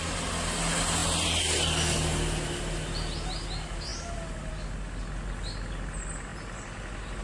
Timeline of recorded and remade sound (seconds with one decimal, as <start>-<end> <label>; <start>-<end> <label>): 0.0-7.2 recorded